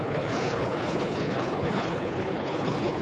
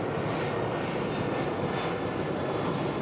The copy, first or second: first